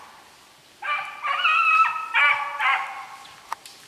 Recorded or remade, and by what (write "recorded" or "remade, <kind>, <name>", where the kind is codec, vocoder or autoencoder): recorded